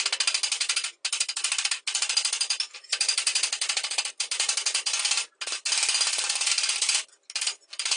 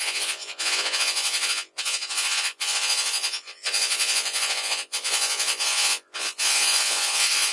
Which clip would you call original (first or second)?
first